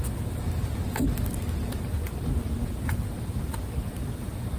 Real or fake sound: real